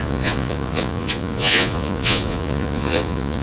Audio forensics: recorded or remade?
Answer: remade